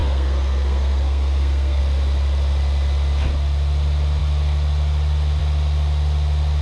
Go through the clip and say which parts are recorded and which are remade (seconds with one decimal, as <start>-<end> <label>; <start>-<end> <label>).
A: 0.0-1.8 remade; 1.8-6.6 recorded